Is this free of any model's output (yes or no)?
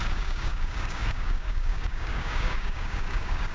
no